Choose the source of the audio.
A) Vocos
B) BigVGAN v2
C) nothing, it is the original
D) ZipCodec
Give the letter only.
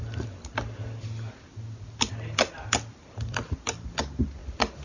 C